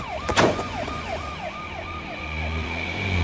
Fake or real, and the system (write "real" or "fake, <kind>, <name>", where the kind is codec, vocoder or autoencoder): fake, vocoder, Vocos